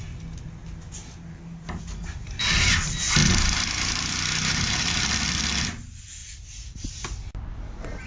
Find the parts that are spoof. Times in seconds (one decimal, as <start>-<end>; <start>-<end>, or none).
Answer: 3.2-5.1